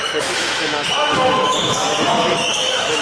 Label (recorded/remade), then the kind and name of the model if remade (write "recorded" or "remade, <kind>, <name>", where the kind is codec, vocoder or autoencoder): remade, autoencoder, DAC-VAE